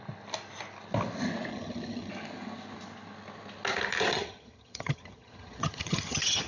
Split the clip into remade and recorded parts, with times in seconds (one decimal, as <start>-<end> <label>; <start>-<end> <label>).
0.0-1.5 recorded; 1.5-2.1 remade; 2.1-4.1 recorded; 4.1-6.5 remade